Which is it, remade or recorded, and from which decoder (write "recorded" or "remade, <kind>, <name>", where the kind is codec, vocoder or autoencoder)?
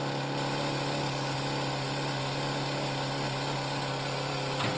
recorded